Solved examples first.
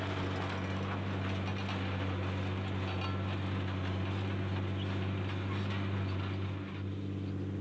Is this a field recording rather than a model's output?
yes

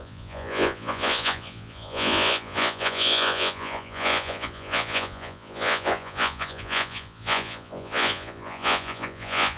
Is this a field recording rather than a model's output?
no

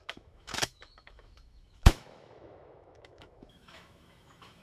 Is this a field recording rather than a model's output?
no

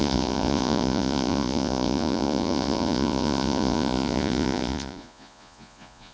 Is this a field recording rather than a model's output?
no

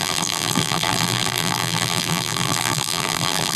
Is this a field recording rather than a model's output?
no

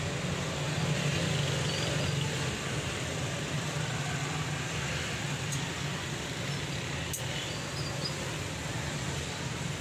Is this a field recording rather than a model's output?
yes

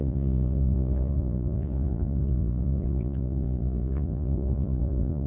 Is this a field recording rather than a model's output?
no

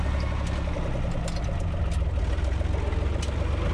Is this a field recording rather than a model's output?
yes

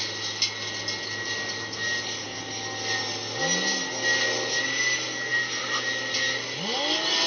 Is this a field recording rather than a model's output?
yes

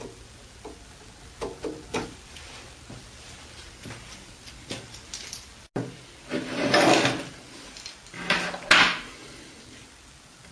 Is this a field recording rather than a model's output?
yes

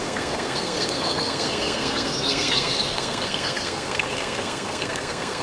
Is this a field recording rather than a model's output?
no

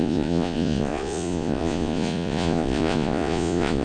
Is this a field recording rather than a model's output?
no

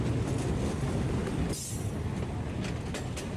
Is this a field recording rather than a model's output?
yes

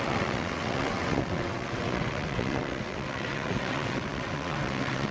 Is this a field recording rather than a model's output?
no